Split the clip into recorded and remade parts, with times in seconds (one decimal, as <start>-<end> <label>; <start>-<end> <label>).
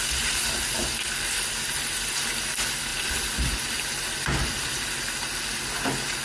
0.0-0.8 recorded; 0.8-2.3 remade; 2.3-2.9 recorded; 2.9-4.9 remade; 4.9-6.2 recorded